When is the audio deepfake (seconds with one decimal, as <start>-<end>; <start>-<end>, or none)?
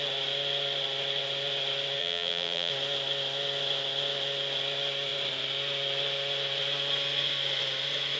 2.0-2.7